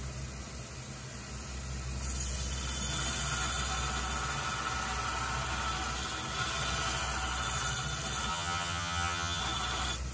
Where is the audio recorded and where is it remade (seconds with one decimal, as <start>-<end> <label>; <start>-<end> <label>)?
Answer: 0.0-8.3 recorded; 8.3-9.4 remade; 9.4-10.1 recorded